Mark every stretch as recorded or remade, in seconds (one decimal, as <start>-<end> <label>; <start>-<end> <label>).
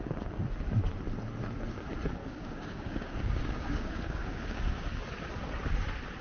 0.0-2.2 recorded; 2.2-5.1 remade; 5.1-6.2 recorded